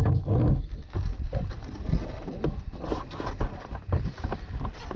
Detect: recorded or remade recorded